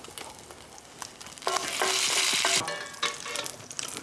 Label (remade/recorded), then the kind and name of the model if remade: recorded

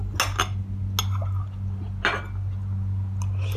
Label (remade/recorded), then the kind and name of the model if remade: recorded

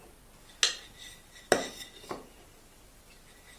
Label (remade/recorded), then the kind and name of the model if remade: recorded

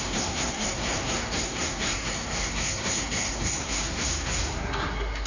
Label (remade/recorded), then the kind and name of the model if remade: remade, codec, SNAC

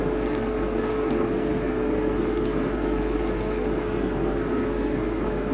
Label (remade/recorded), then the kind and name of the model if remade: remade, codec, SNAC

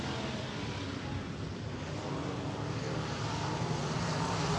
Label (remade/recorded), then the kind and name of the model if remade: recorded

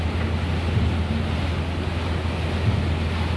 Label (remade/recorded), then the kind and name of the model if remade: recorded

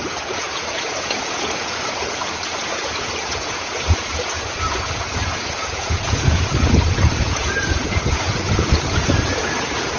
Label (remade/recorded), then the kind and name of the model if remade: remade, vocoder, Vocos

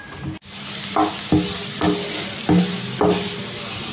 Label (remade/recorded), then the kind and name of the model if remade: recorded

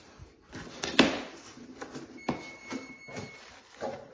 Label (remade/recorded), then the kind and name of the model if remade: recorded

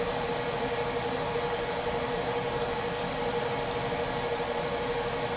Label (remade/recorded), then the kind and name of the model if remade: recorded